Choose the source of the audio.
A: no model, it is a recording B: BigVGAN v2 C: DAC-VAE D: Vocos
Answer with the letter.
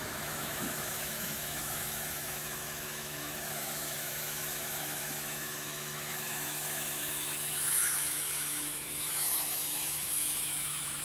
C